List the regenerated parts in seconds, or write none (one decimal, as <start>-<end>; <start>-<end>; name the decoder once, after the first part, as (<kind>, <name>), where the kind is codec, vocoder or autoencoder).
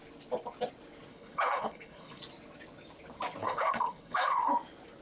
1.1-2.2 (codec, HILCodec); 3.4-4.5